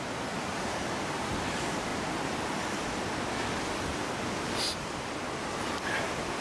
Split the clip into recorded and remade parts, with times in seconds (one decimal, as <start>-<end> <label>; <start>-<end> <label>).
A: 0.0-6.4 recorded